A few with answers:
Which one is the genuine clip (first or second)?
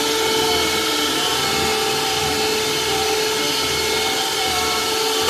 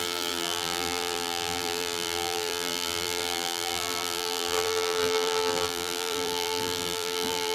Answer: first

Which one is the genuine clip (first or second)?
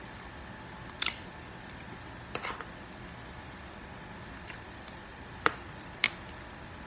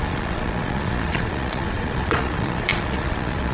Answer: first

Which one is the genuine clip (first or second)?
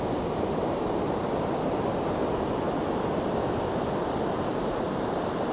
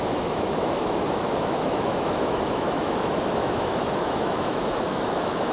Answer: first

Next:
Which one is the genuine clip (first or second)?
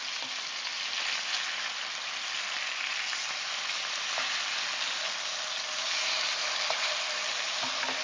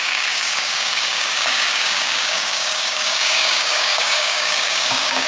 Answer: first